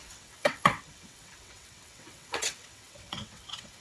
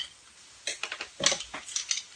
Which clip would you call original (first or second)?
second